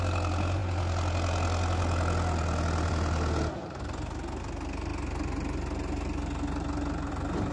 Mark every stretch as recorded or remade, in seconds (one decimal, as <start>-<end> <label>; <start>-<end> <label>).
0.0-7.5 recorded

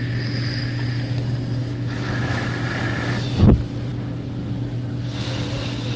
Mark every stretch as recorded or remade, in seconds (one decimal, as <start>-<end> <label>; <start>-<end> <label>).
0.0-1.6 recorded; 1.6-2.5 remade; 2.5-6.0 recorded

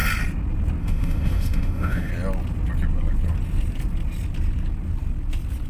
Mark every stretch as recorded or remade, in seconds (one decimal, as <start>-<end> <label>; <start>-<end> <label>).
0.0-0.8 recorded; 0.8-2.1 remade; 2.1-5.7 recorded

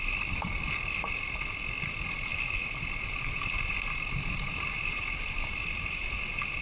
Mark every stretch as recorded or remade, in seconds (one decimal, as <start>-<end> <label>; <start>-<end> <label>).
0.0-6.6 recorded

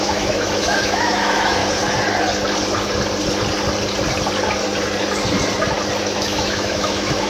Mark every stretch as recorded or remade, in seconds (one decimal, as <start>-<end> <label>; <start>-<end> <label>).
0.0-1.6 remade; 1.6-6.0 recorded; 6.0-7.3 remade

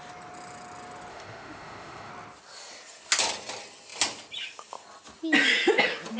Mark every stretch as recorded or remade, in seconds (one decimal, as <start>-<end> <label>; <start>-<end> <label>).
0.0-1.1 recorded; 1.1-2.1 remade; 2.1-6.2 recorded